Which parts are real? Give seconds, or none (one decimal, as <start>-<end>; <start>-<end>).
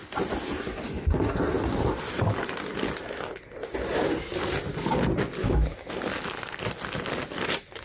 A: 0.0-5.4; 5.9-7.8